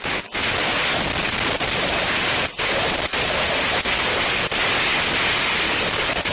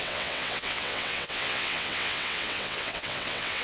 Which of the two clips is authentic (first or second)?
first